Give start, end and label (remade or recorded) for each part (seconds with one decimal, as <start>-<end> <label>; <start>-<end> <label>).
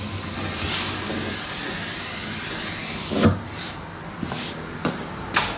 0.0-5.6 recorded